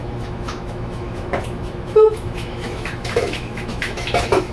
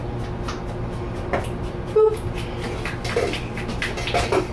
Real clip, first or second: second